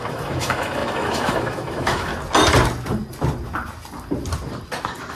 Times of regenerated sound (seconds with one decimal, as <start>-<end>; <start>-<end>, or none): 0.0-2.1